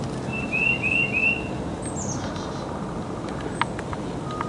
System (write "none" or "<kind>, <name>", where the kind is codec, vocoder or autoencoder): none